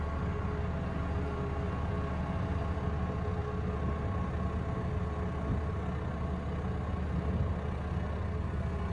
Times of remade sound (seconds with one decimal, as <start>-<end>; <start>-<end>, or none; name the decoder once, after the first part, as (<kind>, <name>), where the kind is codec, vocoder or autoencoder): none